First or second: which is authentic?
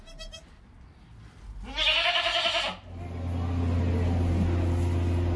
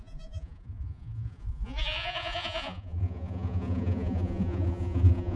first